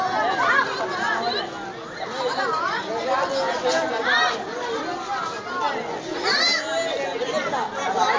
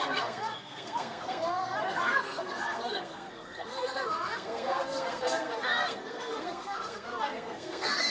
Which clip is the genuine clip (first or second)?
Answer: first